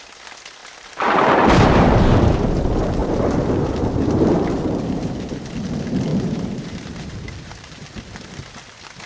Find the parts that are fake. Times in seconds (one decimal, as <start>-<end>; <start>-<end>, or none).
0.6-2.4; 3.0-5.1; 6.1-7.8